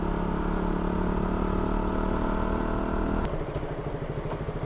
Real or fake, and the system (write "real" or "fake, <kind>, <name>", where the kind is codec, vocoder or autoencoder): real